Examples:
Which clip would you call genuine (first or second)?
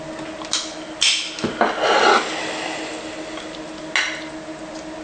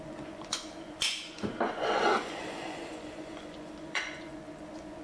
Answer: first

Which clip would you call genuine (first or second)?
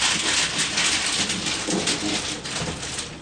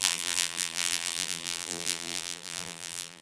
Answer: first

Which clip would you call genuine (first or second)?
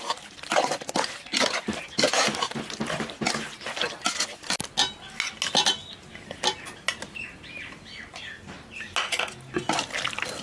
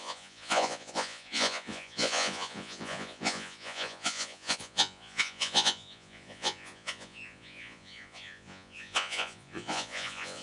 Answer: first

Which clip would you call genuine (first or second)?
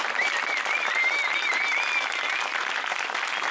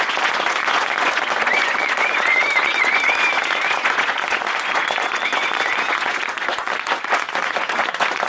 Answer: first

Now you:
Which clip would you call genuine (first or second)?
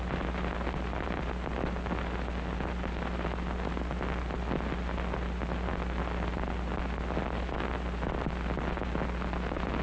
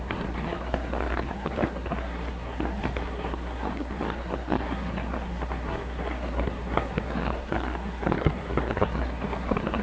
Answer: first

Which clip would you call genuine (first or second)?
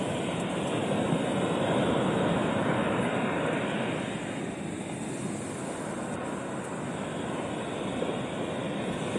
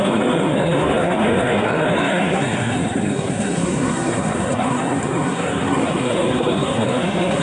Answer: first